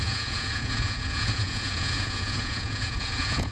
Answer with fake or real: fake